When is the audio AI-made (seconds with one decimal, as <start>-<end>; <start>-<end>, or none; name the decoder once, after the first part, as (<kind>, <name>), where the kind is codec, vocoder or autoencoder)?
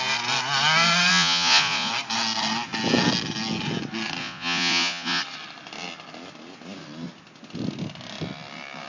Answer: 1.1-1.9 (vocoder, Vocos); 4.2-5.2